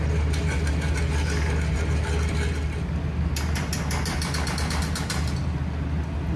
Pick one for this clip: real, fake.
real